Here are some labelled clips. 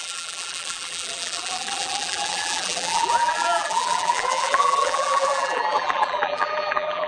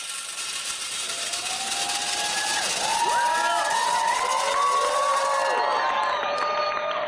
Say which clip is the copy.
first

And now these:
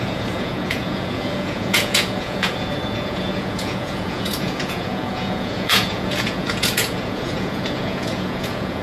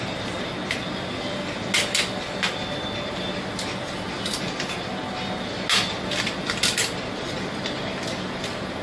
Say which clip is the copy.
first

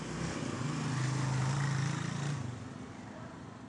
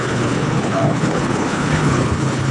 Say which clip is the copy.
second